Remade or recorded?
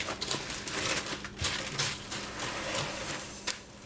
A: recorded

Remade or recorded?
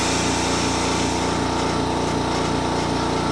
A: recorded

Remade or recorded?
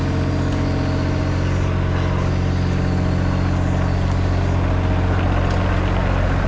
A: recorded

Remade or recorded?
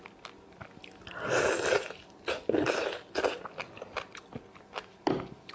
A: recorded